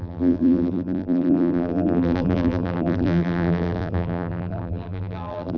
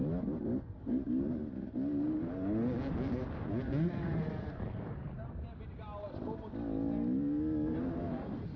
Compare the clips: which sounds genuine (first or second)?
second